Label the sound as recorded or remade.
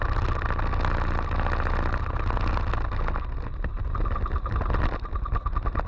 recorded